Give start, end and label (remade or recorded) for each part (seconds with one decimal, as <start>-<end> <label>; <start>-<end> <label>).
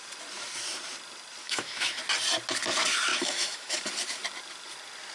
0.0-1.4 recorded; 1.4-2.0 remade; 2.0-3.1 recorded; 3.1-3.8 remade; 3.8-5.1 recorded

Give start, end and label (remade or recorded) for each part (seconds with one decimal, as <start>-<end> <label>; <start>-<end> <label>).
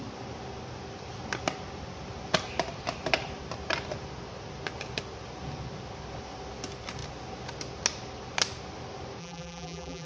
0.0-9.2 recorded; 9.2-10.1 remade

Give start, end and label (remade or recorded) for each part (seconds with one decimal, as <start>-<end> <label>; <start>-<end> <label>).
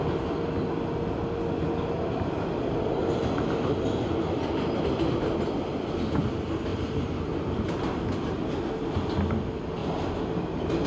0.0-3.0 recorded; 3.0-3.8 remade; 3.8-6.7 recorded; 6.7-8.6 remade; 8.6-10.9 recorded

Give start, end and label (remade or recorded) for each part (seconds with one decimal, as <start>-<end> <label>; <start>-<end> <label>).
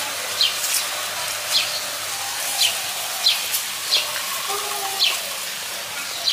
0.0-6.3 recorded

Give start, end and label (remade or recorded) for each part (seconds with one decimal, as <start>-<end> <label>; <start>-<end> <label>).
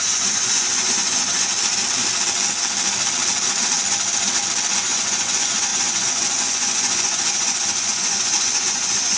0.0-1.5 remade; 1.5-4.8 recorded; 4.8-9.2 remade